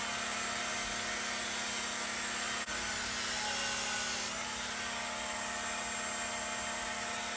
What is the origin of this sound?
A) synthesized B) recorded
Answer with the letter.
B